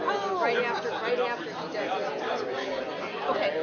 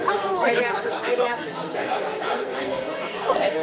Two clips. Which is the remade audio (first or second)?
second